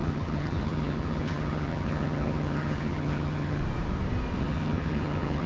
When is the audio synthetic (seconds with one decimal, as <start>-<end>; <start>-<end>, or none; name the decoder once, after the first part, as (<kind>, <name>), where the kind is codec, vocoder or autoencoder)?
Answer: 0.0-3.6 (vocoder, HiFi-GAN); 4.4-5.5

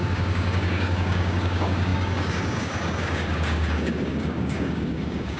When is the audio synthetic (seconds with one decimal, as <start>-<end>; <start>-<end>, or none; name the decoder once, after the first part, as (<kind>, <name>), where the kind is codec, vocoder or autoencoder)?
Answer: 0.0-5.4 (codec, DAC)

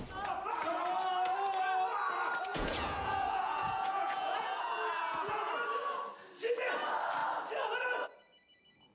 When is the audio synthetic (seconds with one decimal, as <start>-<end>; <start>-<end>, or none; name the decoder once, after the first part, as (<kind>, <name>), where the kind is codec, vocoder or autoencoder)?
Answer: 2.5-5.5 (vocoder, Vocos)

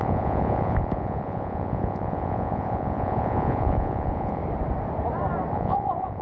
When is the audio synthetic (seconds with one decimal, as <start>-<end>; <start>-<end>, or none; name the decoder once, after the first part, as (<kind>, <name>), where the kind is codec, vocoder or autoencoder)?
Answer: 0.0-4.4 (vocoder, Vocos); 5.5-6.2

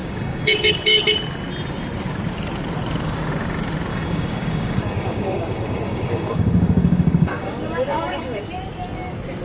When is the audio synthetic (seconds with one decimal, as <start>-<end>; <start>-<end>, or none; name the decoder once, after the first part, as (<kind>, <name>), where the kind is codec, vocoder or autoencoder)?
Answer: 0.0-1.0 (codec, DAC); 3.9-8.4

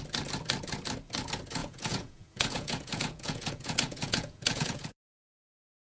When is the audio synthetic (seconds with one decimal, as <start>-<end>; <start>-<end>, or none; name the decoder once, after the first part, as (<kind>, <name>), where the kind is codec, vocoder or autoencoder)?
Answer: 1.6-5.1 (vocoder, Vocos)